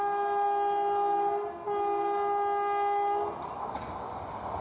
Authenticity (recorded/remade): recorded